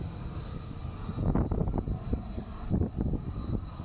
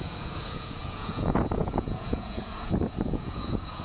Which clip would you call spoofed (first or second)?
second